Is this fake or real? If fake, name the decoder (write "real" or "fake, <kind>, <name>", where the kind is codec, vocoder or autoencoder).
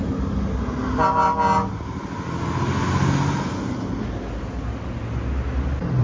real